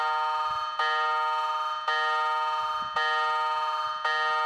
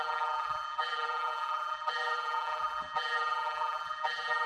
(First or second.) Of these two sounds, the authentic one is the first